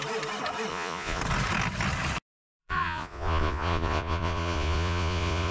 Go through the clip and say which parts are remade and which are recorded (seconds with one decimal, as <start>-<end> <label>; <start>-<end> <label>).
0.0-0.7 recorded; 0.7-1.2 remade; 1.2-2.6 recorded; 2.6-5.5 remade